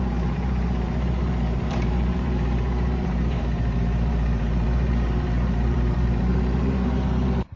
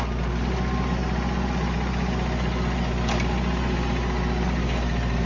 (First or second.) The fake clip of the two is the first